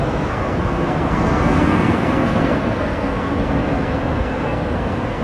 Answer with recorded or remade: remade